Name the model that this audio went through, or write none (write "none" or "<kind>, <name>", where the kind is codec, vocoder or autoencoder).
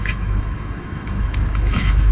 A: autoencoder, DAC-VAE